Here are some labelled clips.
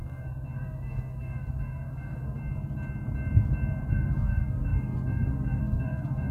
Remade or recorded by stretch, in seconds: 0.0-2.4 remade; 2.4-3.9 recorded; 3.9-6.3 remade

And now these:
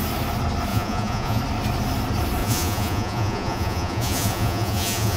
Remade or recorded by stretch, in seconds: 0.0-0.7 recorded; 0.7-1.4 remade; 1.4-2.4 recorded; 2.4-5.2 remade

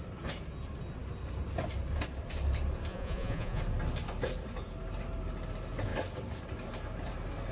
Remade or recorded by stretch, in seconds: 0.0-2.9 recorded; 2.9-3.6 remade; 3.6-7.5 recorded

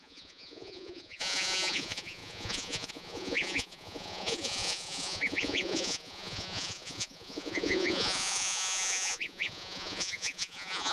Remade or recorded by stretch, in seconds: 0.0-10.9 remade

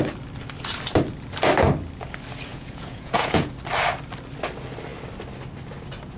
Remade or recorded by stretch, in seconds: 0.0-2.5 recorded; 2.5-3.5 remade; 3.5-6.2 recorded

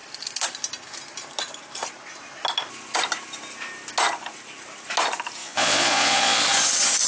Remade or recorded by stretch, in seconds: 0.0-5.4 recorded; 5.4-6.4 remade; 6.4-7.1 recorded